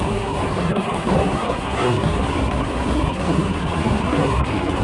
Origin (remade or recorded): remade